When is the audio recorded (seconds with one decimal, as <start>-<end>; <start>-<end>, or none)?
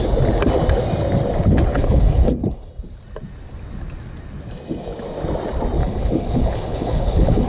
0.0-1.7; 2.7-5.8